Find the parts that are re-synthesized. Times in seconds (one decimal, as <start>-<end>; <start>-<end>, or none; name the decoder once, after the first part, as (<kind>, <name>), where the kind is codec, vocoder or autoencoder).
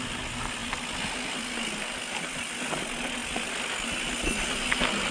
none